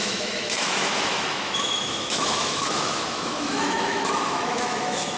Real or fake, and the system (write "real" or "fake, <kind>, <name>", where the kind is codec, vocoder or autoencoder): fake, autoencoder, DAC-VAE